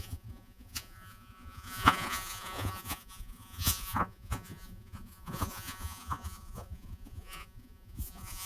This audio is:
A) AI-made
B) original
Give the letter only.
A